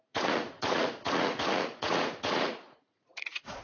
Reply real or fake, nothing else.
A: fake